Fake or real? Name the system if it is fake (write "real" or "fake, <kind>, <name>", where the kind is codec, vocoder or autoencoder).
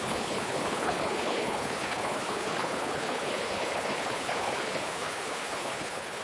fake, codec, HILCodec